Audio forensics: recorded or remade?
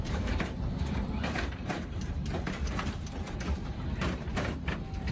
remade